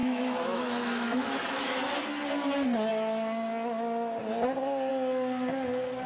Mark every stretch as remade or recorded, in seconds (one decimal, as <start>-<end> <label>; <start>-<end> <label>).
0.0-1.9 remade; 1.9-6.1 recorded